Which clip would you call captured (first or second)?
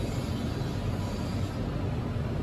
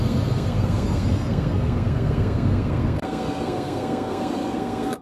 first